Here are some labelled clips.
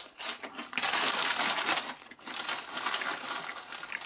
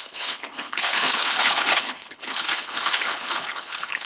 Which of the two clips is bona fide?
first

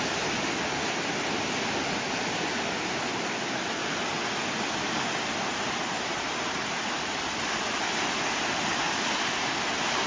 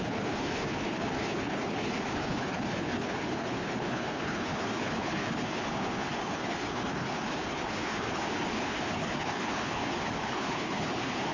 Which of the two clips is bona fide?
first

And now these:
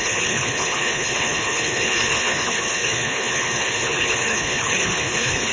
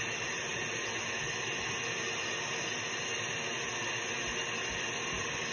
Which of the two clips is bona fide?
second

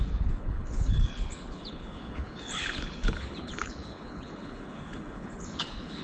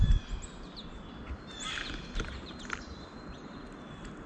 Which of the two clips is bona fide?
second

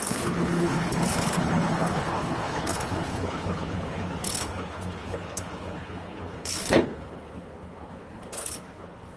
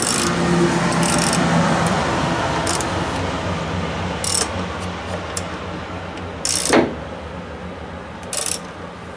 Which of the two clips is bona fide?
second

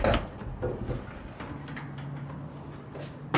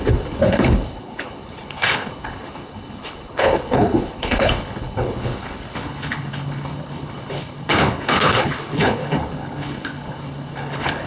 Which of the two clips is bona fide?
first